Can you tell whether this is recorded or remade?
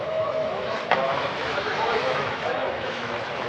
remade